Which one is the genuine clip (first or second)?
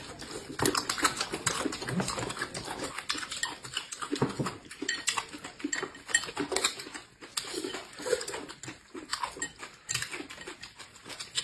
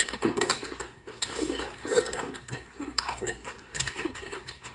first